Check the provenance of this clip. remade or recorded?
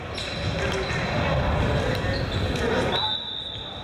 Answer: recorded